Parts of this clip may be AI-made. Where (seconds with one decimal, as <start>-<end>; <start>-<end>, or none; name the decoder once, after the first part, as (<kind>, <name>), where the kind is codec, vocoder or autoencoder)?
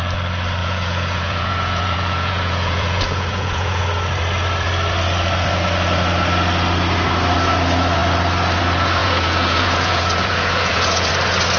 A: 0.6-3.8 (vocoder, Vocos); 9.0-11.1